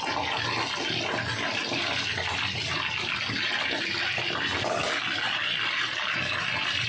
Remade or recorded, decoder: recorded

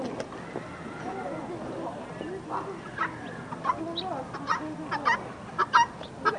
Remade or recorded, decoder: recorded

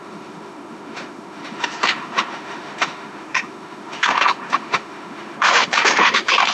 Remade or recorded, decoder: remade, autoencoder, DAC-VAE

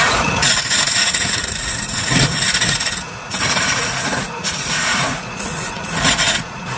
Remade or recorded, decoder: remade, vocoder, Vocos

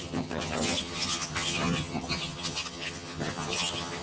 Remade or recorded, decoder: remade, vocoder, HiFi-GAN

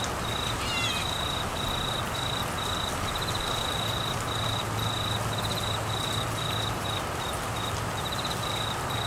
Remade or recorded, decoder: recorded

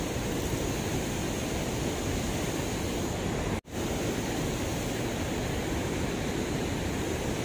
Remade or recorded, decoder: recorded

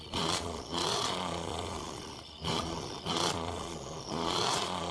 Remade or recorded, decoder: remade, vocoder, Vocos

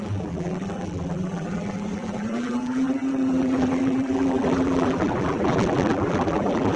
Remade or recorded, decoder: remade, vocoder, BigVGAN v2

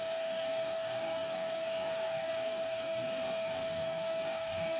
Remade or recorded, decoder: remade, codec, DAC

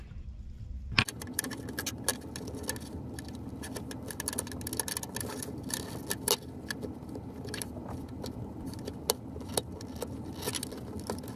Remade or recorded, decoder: recorded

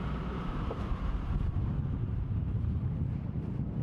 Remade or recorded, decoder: remade, vocoder, BigVGAN v2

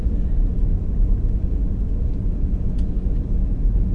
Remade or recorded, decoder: recorded